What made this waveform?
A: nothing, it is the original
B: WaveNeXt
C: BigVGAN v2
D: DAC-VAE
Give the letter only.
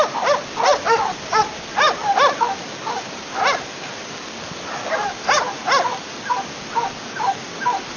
A